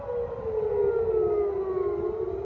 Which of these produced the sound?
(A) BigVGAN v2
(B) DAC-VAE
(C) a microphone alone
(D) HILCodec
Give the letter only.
C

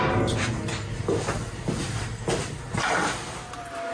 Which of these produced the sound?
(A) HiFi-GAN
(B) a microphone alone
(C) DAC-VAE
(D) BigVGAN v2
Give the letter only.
B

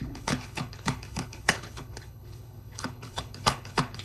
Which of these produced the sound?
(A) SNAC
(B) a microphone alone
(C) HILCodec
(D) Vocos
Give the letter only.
C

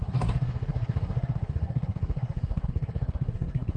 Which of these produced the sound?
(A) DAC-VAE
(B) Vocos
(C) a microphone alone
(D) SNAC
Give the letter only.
D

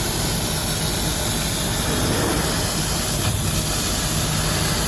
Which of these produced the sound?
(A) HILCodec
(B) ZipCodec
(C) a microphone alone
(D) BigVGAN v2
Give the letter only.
C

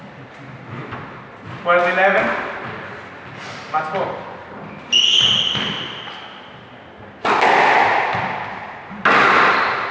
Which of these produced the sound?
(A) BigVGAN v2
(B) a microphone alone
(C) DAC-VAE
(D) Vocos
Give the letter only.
B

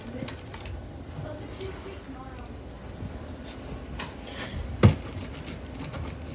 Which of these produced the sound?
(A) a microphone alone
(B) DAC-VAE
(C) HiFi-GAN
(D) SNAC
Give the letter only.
A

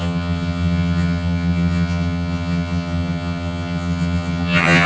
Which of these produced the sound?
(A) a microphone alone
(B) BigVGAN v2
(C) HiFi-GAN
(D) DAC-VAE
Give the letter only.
C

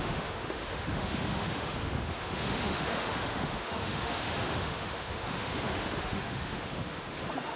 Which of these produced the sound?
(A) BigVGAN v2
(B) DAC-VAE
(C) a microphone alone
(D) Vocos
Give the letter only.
B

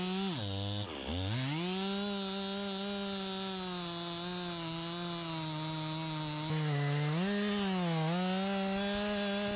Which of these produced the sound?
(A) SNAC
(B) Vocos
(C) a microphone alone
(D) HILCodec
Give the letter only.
C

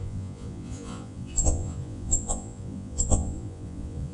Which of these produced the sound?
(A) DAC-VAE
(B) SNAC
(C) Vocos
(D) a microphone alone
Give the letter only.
C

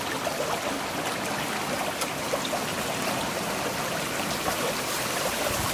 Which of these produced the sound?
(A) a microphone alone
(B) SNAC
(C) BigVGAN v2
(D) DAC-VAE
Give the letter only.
A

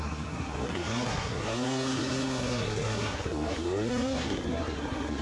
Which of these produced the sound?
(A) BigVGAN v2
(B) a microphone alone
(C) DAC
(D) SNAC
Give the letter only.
D